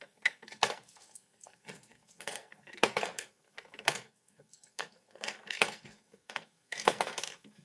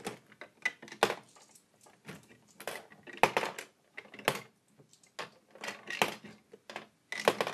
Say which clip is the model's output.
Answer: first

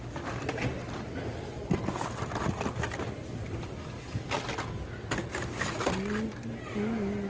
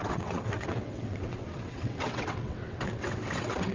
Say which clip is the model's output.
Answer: second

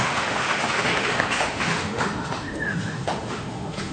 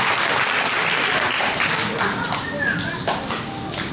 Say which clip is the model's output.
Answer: first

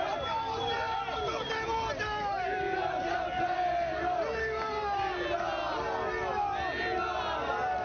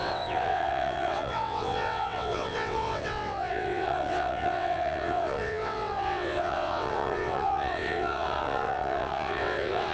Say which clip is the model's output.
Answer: second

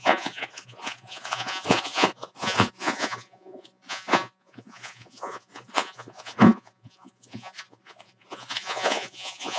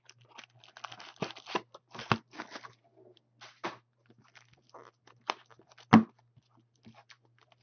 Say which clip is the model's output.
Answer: first